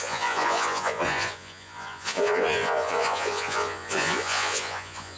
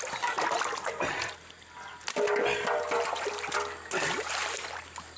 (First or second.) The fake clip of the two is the first